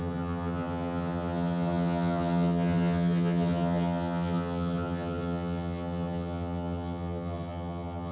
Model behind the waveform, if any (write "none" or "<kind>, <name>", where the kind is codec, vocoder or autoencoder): vocoder, HiFi-GAN